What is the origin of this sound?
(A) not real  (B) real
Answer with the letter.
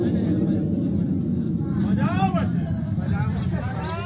A